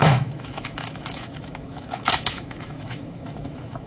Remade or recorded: remade